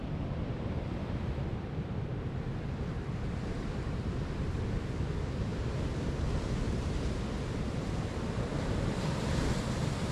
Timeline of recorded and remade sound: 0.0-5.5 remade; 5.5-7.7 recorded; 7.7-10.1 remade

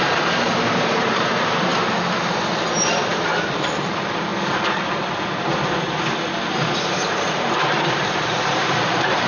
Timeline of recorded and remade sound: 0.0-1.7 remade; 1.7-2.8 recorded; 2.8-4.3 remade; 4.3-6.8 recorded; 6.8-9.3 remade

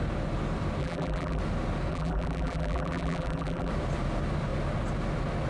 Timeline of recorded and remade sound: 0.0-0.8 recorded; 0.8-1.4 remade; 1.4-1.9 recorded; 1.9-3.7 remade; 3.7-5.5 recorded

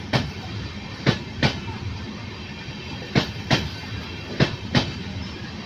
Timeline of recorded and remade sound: 0.0-2.2 remade; 2.2-4.3 recorded; 4.3-5.7 remade